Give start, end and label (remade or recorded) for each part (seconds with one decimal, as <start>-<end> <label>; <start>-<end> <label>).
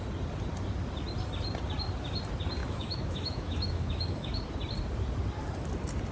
0.0-2.6 recorded; 2.6-4.4 remade; 4.4-6.1 recorded